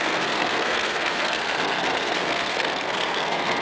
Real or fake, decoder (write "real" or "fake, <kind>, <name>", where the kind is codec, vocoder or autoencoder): fake, codec, SNAC